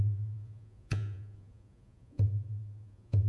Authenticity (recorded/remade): remade